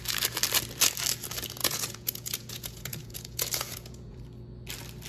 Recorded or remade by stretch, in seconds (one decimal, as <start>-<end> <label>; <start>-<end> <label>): 0.0-1.6 recorded; 1.6-4.2 remade; 4.2-5.1 recorded